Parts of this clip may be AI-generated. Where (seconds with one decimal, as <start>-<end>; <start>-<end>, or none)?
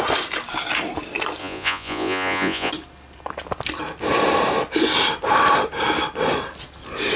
1.4-2.7